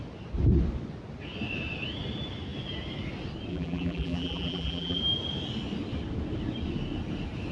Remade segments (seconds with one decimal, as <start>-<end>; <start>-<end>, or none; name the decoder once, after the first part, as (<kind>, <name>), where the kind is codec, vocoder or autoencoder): 3.5-5.0 (vocoder, BigVGAN v2)